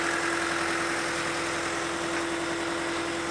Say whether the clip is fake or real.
real